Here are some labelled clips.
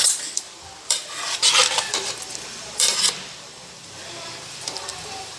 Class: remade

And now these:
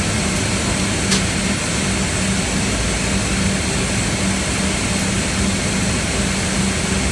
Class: recorded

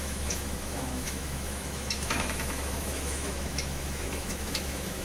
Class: remade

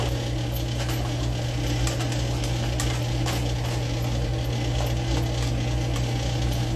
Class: recorded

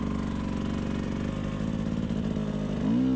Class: recorded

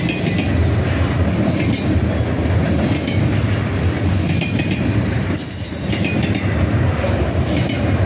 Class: recorded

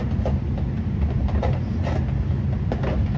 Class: recorded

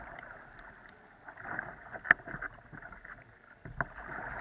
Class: recorded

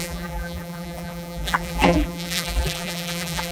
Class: remade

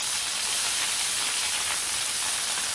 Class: recorded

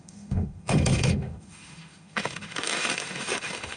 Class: remade